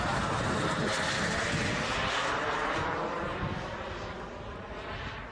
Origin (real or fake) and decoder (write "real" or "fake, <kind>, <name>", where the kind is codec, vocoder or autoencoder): real